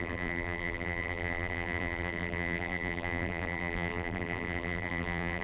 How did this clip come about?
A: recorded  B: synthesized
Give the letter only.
B